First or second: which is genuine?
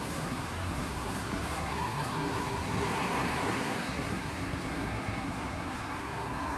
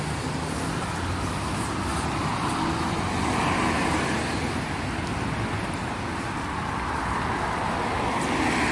second